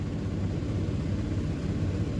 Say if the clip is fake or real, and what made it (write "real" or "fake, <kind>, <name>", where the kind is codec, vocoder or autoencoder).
real